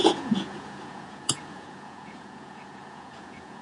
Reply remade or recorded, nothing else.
remade